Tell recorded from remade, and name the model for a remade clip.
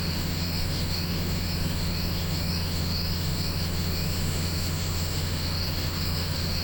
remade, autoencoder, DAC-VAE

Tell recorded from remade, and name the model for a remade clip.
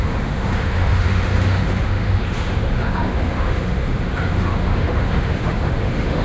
remade, autoencoder, DAC-VAE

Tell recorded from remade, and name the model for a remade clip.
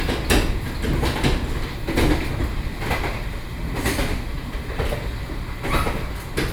recorded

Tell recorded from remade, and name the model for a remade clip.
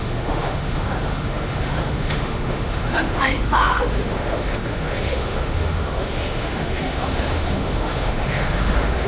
remade, autoencoder, DAC-VAE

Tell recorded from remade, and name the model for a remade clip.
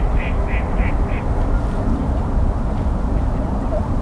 recorded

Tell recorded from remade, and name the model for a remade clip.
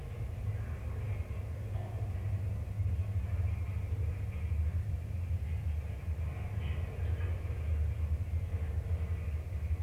recorded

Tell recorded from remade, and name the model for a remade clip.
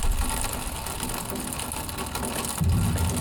recorded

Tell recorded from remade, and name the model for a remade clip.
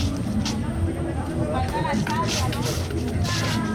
recorded